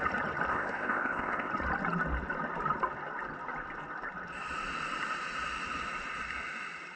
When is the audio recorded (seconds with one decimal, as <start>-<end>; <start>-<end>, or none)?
0.0-0.5; 1.5-7.0